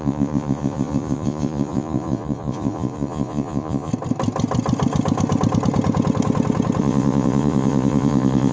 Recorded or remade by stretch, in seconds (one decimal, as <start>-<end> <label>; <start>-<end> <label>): 0.0-3.9 remade; 3.9-6.8 recorded; 6.8-8.5 remade